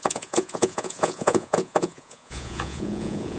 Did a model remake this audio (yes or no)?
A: yes